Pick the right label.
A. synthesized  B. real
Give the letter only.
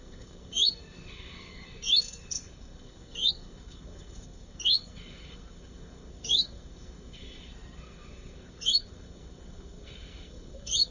A